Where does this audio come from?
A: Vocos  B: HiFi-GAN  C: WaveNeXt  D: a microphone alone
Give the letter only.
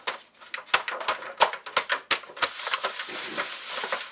D